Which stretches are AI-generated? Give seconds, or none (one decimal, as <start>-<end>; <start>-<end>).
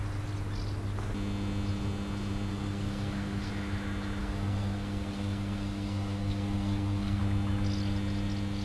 2.5-3.5; 4.2-7.2